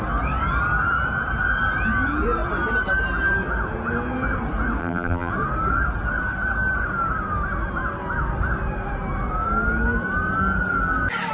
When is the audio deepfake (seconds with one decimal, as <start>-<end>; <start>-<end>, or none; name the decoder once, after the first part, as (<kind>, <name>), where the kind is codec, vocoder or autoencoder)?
4.8-5.3 (vocoder, BigVGAN v2)